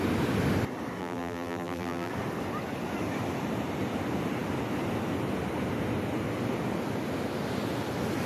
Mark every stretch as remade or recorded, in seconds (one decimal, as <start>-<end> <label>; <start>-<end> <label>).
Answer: 0.0-1.0 recorded; 1.0-2.1 remade; 2.1-8.3 recorded